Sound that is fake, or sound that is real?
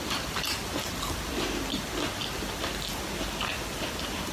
real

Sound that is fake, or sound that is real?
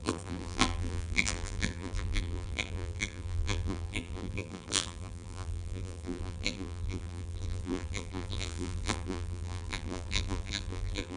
fake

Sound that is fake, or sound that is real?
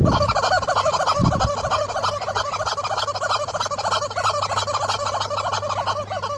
real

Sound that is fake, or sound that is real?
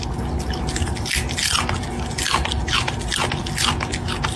real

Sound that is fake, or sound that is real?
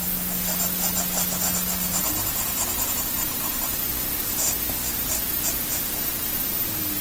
fake